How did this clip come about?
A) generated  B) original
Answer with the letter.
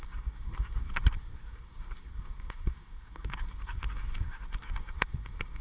A